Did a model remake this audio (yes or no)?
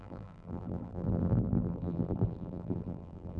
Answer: yes